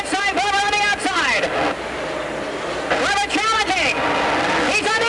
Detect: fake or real real